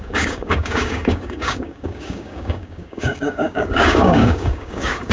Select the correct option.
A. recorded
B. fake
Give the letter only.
B